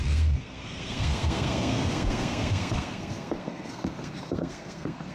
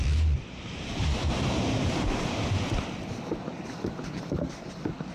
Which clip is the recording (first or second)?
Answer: second